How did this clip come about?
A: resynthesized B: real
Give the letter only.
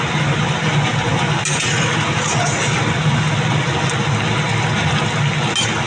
B